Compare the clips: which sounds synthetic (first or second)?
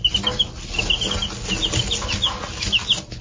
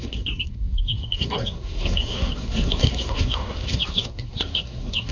second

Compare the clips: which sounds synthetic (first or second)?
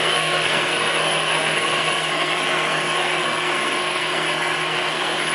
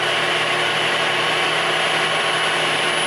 first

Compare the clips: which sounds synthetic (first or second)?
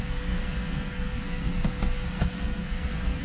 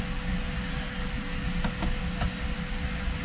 first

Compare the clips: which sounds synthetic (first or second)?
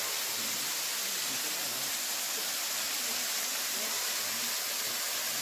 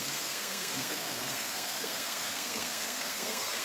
second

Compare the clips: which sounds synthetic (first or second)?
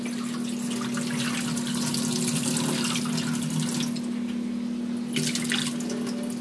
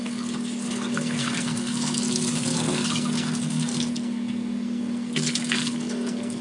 second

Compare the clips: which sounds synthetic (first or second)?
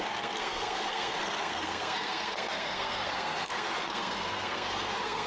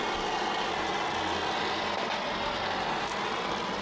first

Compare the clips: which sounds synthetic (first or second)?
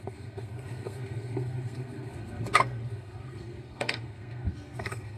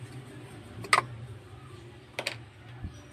first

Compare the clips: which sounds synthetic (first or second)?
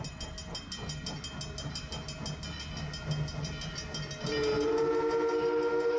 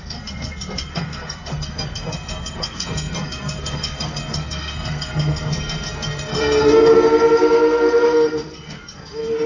second